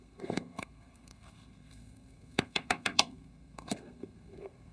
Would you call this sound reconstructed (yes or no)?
yes